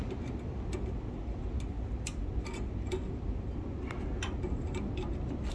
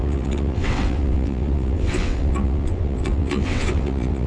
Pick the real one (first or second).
first